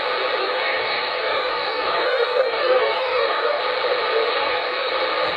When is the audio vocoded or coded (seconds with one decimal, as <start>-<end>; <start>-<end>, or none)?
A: 0.4-3.6; 4.3-4.9